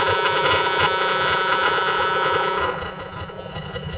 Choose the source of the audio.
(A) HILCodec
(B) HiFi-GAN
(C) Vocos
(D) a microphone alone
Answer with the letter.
C